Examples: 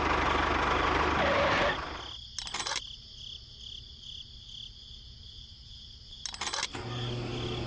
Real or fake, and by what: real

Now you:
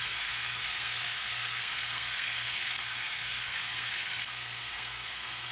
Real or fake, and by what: fake, codec, SNAC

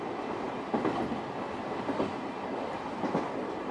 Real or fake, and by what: real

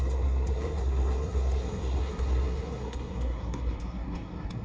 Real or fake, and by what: fake, codec, SNAC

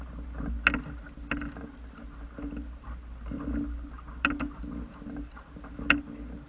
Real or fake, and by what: real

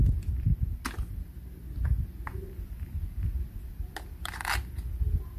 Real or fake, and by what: real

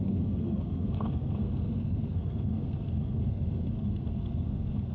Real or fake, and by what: fake, codec, SNAC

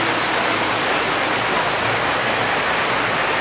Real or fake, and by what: real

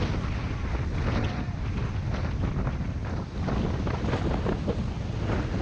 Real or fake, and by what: real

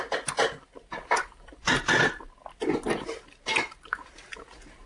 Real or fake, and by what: real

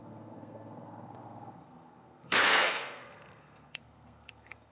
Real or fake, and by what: fake, codec, SNAC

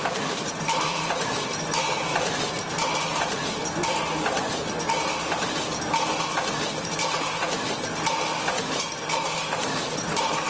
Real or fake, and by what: real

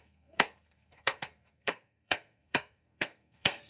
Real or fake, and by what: fake, codec, SNAC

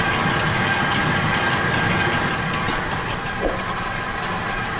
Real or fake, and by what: real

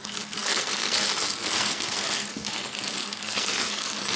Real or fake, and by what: fake, codec, SNAC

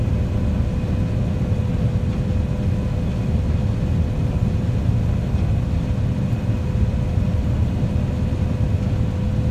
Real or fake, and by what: real